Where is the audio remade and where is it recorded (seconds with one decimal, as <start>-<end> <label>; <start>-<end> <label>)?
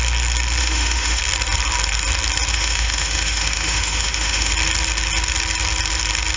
0.0-0.6 recorded; 0.6-1.2 remade; 1.2-2.5 recorded; 2.5-4.5 remade; 4.5-6.4 recorded